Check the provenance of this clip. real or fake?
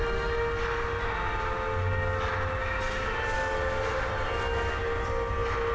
real